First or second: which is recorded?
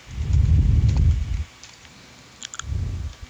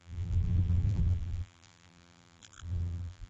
first